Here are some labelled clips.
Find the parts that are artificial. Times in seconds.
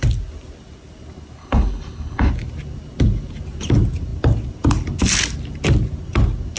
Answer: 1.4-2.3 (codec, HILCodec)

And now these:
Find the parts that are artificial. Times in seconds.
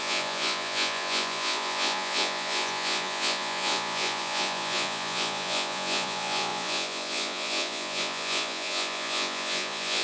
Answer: 0.0-10.0 (vocoder, Vocos)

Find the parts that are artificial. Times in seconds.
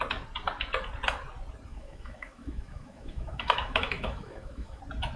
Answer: 1.7-4.8 (autoencoder, DAC-VAE)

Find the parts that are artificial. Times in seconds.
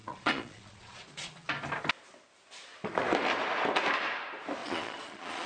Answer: 0.0-1.5 (vocoder, Vocos); 4.6-5.5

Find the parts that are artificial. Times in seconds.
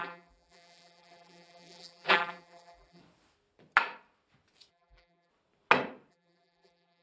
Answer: 0.0-3.0 (vocoder, BigVGAN v2); 4.7-5.3; 6.1-7.0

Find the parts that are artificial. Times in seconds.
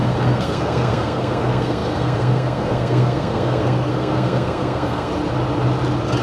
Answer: 0.0-5.1 (codec, SNAC)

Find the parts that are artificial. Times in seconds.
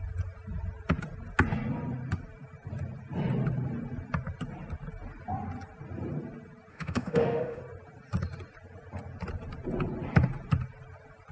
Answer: 6.7-7.6 (autoencoder, DAC-VAE)